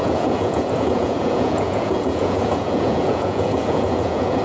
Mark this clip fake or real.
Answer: fake